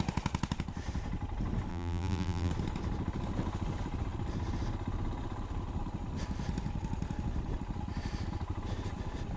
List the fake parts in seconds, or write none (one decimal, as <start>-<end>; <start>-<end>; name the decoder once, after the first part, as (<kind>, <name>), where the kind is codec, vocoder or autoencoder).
1.7-2.5 (vocoder, BigVGAN v2)